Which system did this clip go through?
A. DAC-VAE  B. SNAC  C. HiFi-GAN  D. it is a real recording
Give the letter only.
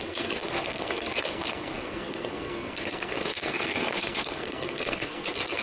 B